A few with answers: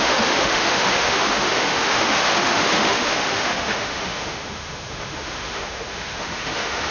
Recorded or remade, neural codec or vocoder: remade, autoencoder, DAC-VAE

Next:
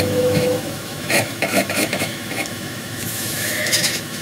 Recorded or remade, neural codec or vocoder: remade, autoencoder, DAC-VAE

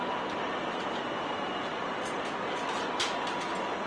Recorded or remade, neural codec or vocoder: recorded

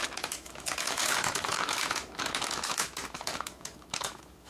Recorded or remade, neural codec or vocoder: remade, autoencoder, DAC-VAE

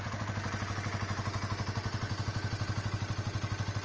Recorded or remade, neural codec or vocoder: recorded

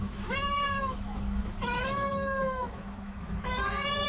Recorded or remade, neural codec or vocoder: remade, autoencoder, DAC-VAE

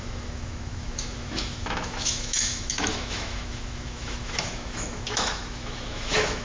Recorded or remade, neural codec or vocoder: remade, autoencoder, DAC-VAE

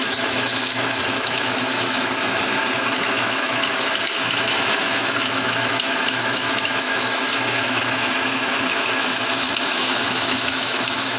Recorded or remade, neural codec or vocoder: remade, autoencoder, DAC-VAE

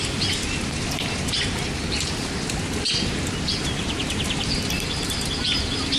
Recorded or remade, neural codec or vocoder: recorded